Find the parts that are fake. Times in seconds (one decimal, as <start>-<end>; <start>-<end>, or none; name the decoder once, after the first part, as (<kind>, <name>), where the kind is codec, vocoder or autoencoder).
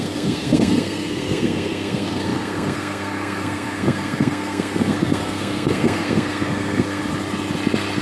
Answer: 0.0-7.0 (codec, SNAC)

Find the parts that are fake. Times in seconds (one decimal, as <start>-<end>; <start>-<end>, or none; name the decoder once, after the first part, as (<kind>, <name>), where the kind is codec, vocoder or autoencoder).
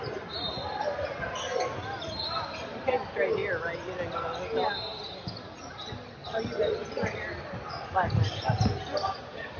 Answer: none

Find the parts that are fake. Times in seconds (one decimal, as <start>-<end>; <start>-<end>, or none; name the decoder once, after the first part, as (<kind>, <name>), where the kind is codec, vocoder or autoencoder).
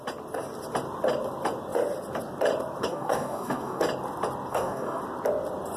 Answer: 2.8-3.8 (codec, DAC); 4.5-5.0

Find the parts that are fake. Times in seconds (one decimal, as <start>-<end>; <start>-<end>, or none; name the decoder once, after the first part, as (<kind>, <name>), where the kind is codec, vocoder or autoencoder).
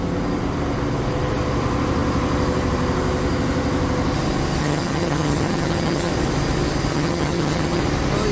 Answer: 4.6-6.1 (vocoder, HiFi-GAN); 6.9-7.8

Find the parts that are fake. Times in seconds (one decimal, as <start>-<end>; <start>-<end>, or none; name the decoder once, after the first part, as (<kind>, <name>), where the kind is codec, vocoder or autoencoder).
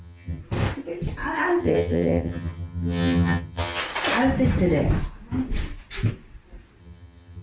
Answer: 0.0-0.4 (vocoder, HiFi-GAN); 1.6-3.8; 6.8-7.4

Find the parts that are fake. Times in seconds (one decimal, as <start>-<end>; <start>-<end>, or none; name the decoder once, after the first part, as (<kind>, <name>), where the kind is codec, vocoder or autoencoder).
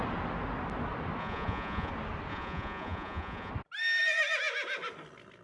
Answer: 1.2-1.9 (vocoder, Vocos); 2.3-3.5